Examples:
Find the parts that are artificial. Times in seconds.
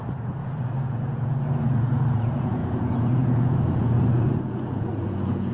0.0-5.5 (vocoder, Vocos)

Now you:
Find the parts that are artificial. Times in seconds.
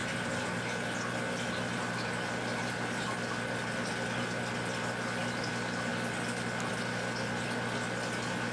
none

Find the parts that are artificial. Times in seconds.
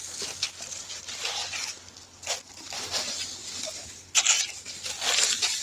none